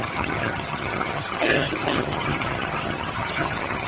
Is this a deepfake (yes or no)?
yes